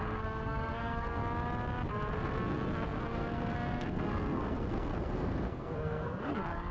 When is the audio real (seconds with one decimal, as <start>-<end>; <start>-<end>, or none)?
1.2-1.9